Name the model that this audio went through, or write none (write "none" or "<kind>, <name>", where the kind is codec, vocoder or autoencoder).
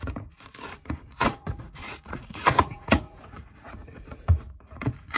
vocoder, Vocos